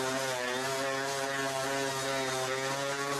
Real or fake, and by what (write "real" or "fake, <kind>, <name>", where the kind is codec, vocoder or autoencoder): real